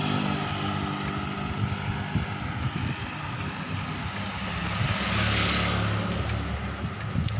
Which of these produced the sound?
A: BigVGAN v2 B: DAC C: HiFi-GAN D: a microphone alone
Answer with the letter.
D